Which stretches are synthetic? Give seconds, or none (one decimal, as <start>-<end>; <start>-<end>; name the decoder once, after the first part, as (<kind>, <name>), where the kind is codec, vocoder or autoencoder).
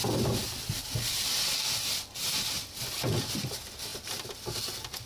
none